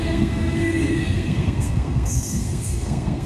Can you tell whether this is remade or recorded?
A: remade